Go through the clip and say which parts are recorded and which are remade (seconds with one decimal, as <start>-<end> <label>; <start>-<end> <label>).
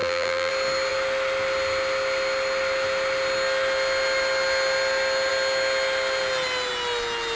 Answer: 0.0-0.5 remade; 0.5-7.4 recorded